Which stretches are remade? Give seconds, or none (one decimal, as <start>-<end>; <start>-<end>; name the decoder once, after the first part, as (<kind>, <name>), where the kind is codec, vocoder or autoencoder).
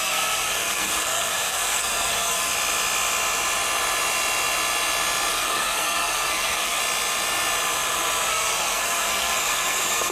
0.0-2.5 (codec, SNAC); 5.3-6.8; 8.3-10.1